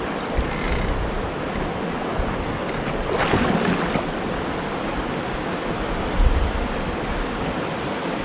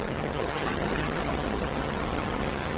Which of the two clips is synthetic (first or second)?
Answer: second